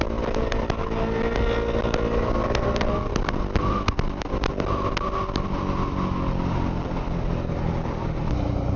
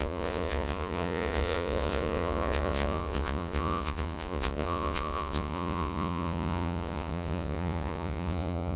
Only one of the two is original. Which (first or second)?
first